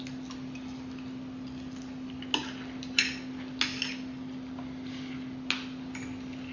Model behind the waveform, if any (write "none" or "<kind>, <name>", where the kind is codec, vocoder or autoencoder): none